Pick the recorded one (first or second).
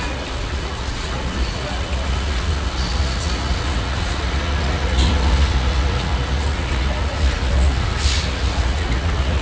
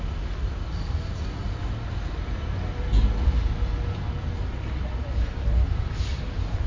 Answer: second